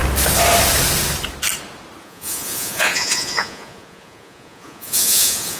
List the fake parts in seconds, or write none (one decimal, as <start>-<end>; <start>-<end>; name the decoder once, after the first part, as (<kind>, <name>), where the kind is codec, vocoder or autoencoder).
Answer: 2.0-5.6 (vocoder, Vocos)